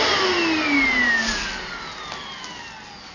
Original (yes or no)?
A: yes